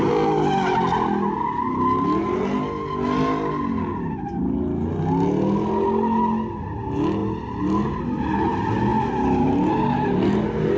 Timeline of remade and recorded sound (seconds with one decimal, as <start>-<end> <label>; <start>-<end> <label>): 0.0-10.8 recorded